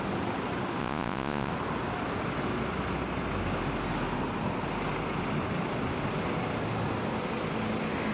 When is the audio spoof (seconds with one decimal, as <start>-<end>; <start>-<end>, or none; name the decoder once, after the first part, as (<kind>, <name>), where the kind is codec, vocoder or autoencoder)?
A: 0.8-1.5 (vocoder, Vocos)

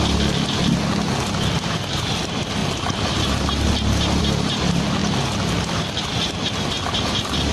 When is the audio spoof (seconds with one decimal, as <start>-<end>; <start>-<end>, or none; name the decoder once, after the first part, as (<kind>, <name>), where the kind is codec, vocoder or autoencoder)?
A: none

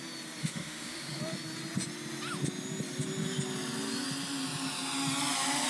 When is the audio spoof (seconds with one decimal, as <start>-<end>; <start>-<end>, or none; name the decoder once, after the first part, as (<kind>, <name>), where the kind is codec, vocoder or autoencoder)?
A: 0.4-1.2 (autoencoder, DAC-VAE)

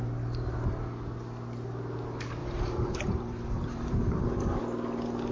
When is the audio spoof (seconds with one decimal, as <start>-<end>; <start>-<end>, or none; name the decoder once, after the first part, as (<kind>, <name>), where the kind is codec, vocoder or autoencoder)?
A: 2.4-4.6 (vocoder, BigVGAN v2)

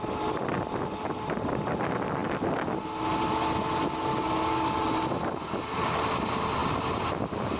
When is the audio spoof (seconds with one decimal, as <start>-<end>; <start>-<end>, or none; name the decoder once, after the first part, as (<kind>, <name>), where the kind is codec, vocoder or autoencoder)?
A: 4.1-4.8 (codec, DAC)

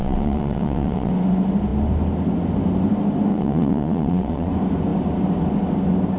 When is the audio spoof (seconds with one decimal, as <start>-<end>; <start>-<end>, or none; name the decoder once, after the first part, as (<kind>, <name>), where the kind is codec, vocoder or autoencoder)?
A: 0.0-1.1 (vocoder, WaveNeXt); 3.3-4.5

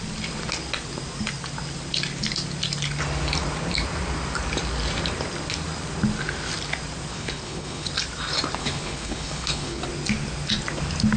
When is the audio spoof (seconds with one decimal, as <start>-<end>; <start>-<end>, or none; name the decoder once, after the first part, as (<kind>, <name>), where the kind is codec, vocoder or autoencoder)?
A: 7.1-7.9 (codec, HILCodec); 8.6-9.8